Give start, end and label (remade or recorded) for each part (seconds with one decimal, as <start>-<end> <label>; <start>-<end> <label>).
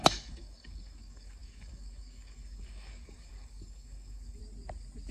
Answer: 0.0-4.4 remade; 4.4-5.1 recorded